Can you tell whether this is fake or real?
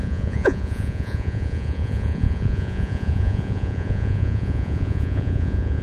fake